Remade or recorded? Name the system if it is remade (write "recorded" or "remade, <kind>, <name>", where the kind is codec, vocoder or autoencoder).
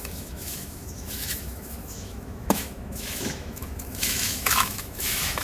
remade, autoencoder, DAC-VAE